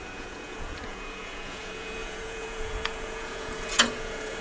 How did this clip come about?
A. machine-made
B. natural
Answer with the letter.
A